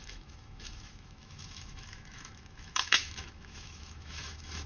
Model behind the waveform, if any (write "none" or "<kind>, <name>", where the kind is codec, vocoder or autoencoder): autoencoder, DAC-VAE